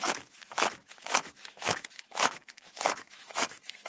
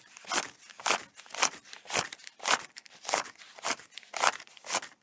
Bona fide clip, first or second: second